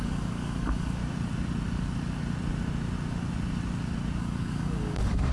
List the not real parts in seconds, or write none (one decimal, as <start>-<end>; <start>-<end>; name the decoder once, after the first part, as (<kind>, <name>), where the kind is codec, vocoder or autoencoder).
0.0-1.0 (codec, DAC); 4.2-5.3